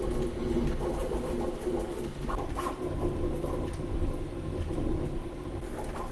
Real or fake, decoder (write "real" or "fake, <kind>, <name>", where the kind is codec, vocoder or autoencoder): real